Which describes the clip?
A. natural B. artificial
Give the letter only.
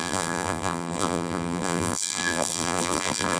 B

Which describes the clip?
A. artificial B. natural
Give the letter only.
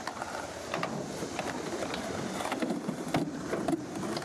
B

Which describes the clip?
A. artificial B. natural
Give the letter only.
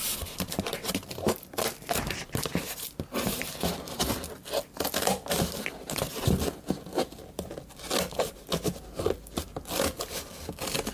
B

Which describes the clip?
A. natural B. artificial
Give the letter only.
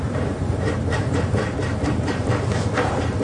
B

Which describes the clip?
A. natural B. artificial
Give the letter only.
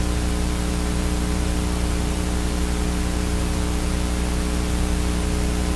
A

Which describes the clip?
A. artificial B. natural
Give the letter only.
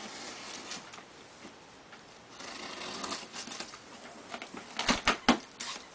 B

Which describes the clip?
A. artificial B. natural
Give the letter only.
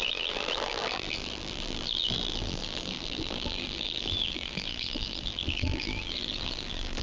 A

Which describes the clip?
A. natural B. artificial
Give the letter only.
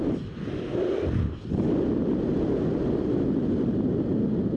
A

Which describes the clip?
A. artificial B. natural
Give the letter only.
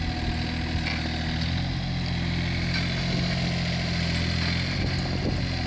B